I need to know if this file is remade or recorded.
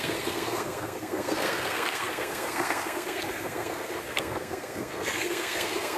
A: remade